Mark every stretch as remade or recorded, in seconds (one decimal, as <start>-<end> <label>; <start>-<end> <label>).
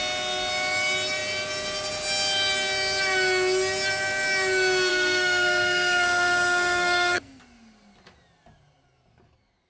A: 0.0-4.9 recorded; 4.9-7.4 remade; 7.4-9.7 recorded